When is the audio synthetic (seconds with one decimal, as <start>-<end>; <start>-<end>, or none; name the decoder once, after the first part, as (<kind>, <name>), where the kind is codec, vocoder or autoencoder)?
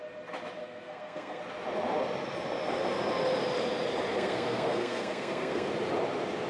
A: 0.6-1.4 (codec, SNAC); 4.1-5.7